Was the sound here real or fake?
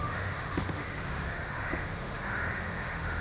fake